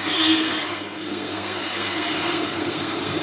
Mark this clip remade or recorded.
remade